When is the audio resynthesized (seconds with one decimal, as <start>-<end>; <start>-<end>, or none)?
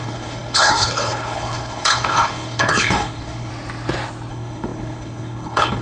0.0-3.5; 4.3-5.8